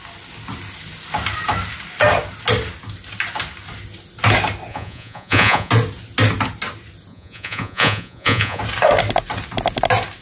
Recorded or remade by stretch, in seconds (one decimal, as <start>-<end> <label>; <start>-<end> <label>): 0.0-4.7 recorded; 4.7-5.7 remade; 5.7-7.1 recorded; 7.1-8.6 remade; 8.6-10.2 recorded